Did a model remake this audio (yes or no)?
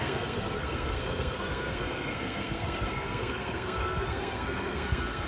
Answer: yes